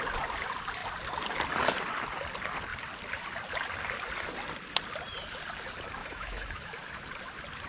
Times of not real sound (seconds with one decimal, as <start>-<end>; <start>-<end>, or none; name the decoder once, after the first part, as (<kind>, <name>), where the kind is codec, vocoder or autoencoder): 6.0-6.7 (autoencoder, DAC-VAE)